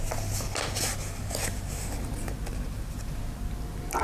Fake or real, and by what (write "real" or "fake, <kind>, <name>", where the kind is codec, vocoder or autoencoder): real